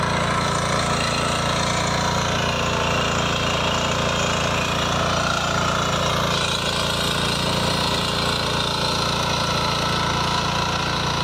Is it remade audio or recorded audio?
recorded